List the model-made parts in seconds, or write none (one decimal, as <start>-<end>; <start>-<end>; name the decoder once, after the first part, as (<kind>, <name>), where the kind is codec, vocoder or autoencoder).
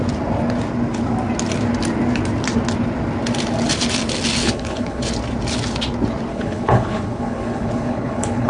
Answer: 4.4-5.1 (codec, HILCodec); 6.3-8.5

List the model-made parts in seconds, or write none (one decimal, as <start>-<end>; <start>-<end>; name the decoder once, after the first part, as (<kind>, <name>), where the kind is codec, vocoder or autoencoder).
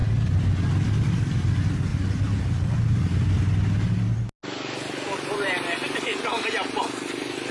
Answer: none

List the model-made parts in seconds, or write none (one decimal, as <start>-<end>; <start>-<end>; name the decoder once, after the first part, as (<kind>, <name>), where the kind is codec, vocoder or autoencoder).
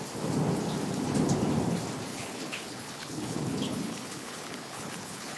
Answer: 2.1-5.4 (codec, HILCodec)